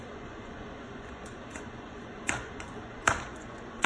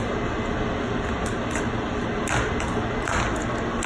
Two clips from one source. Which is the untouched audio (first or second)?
second